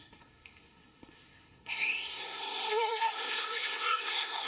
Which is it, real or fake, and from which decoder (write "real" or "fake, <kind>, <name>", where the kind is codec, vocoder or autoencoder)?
fake, codec, SNAC